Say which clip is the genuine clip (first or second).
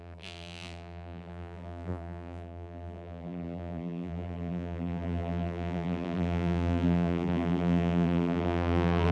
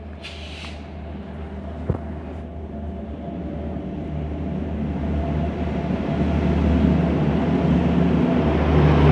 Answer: second